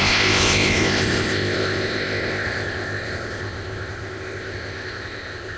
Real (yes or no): no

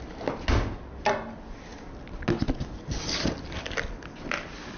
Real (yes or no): yes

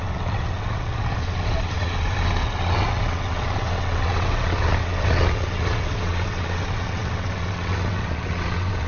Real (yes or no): no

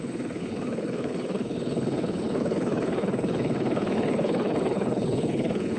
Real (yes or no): no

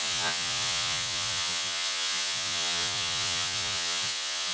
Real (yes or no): no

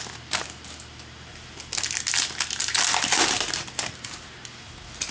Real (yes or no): yes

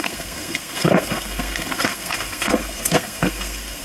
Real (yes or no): no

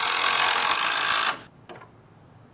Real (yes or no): yes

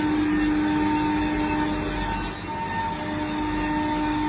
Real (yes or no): yes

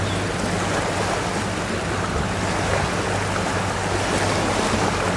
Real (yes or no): yes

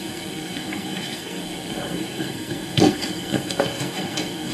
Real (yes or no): no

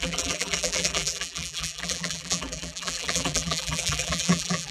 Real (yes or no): no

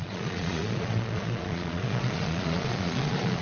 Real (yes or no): no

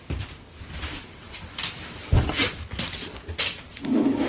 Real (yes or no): yes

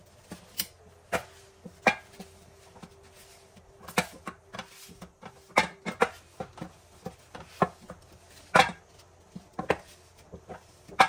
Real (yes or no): yes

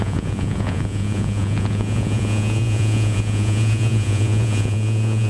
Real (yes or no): no